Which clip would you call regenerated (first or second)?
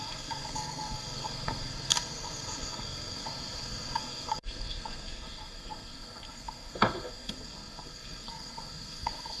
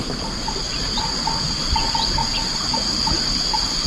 first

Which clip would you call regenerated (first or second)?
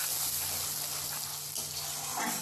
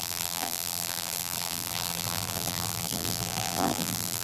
second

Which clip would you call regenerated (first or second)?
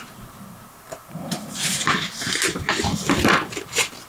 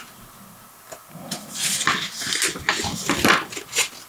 first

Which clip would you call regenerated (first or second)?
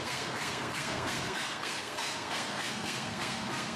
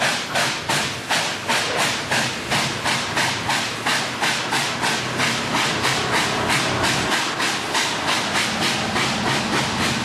first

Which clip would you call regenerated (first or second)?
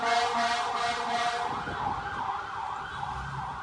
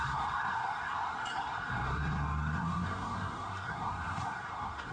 second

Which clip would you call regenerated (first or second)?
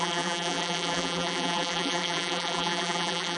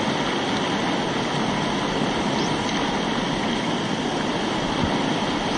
first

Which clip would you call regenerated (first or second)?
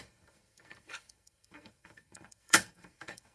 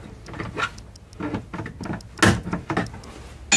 first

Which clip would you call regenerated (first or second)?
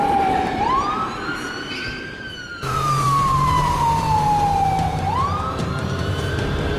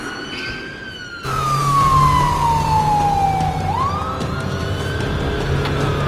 first